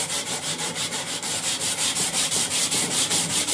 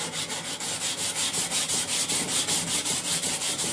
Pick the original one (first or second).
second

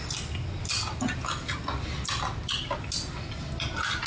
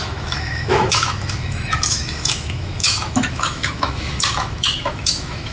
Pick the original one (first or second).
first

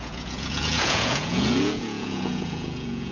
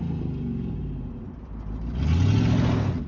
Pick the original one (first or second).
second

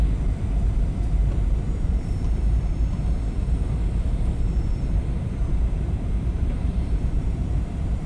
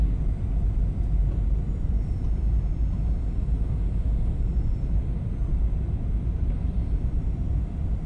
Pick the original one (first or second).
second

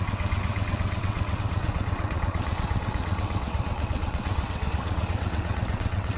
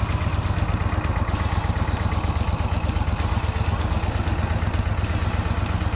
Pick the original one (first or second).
second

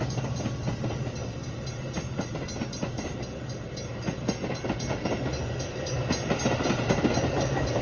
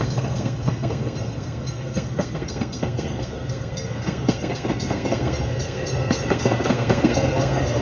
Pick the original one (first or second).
first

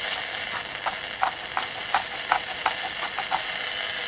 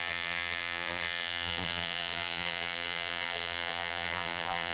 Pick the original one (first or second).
first